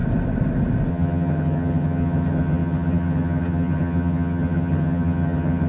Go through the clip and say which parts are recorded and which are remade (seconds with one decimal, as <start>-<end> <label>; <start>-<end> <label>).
0.0-0.9 recorded; 0.9-5.7 remade